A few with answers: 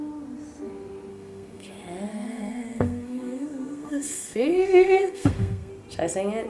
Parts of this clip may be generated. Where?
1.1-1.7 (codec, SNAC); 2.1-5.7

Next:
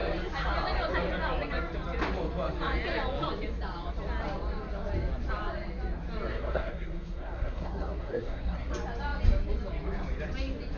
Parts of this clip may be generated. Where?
6.3-8.7 (codec, SNAC)

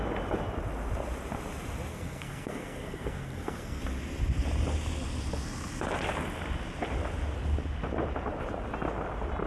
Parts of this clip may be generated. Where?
1.9-3.8 (codec, SNAC)